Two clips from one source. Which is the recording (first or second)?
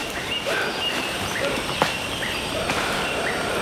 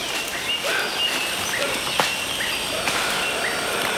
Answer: second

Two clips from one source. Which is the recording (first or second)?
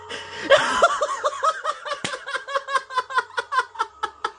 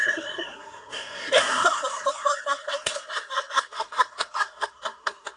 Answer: first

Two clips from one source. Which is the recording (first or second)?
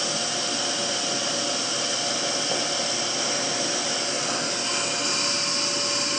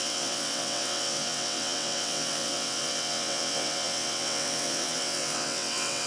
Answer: first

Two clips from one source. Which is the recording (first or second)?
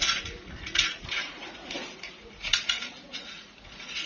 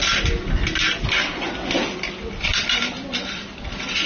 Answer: second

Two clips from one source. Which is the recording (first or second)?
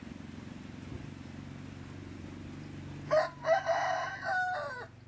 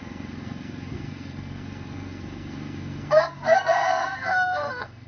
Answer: first